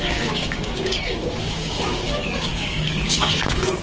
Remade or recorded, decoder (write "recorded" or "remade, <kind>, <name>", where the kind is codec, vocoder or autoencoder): remade, codec, DAC